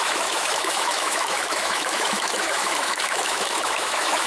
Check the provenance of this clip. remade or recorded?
remade